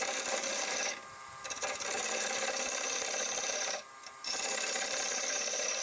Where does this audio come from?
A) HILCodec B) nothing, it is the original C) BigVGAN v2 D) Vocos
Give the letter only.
C